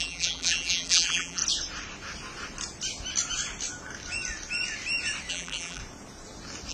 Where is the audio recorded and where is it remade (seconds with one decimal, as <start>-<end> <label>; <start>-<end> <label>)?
0.0-1.4 remade; 1.4-5.3 recorded; 5.3-5.8 remade; 5.8-6.7 recorded